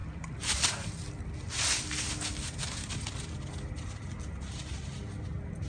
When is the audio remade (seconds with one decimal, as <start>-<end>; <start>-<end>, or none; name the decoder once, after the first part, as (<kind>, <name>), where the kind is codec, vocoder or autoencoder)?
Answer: 0.0-1.1 (vocoder, BigVGAN v2)